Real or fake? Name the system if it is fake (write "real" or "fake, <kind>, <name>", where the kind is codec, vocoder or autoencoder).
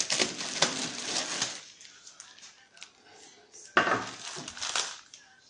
real